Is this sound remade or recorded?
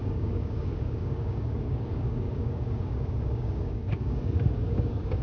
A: remade